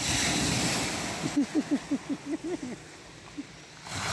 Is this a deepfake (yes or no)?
no